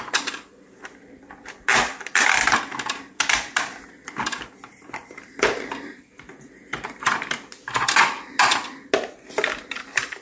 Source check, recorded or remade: recorded